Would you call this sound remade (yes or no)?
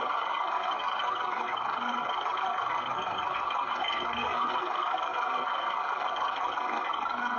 yes